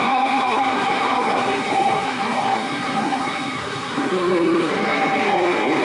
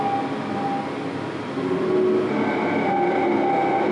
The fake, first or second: first